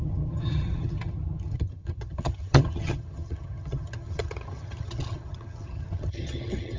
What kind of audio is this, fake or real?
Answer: fake